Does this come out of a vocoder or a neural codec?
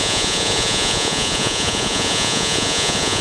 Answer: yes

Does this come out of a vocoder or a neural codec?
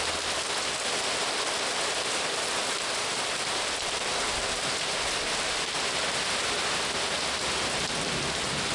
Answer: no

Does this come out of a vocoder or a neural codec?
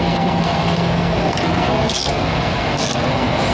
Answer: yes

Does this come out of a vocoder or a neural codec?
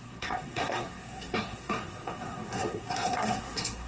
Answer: yes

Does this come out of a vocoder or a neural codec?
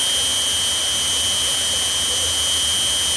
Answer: no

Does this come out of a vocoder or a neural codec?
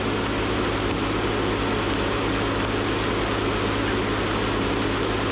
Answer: no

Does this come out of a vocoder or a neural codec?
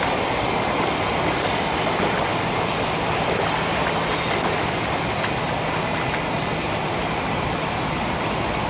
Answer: no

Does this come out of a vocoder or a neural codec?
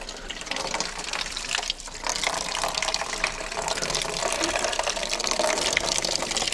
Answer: yes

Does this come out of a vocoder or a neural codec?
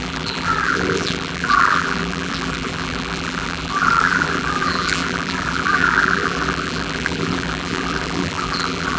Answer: yes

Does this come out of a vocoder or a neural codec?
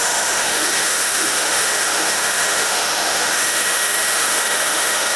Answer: yes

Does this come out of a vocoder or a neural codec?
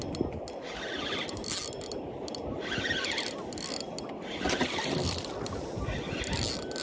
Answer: no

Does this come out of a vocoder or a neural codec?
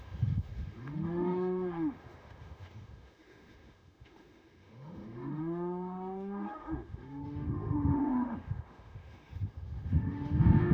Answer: yes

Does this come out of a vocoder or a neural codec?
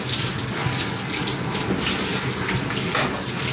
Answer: no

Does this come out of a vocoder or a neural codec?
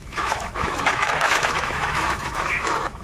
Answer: yes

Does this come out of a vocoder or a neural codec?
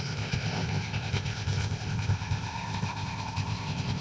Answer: yes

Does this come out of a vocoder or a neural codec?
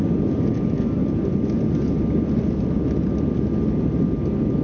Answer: no